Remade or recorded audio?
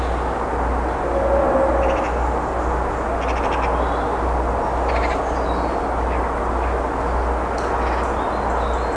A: recorded